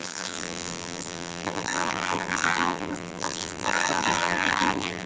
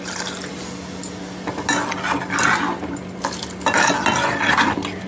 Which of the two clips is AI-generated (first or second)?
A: first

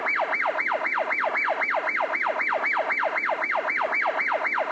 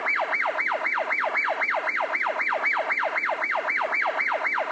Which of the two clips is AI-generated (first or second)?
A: second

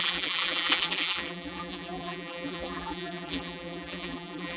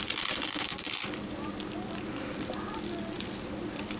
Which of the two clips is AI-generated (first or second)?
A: first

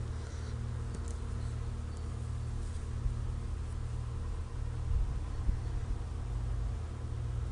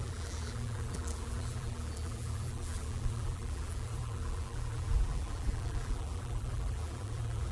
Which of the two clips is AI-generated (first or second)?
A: second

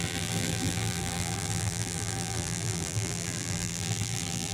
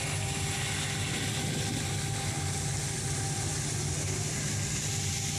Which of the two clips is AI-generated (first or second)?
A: first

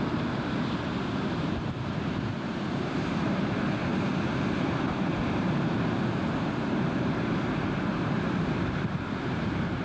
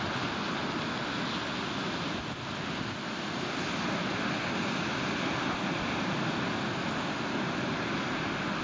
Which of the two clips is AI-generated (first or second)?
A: first